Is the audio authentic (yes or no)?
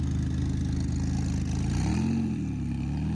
yes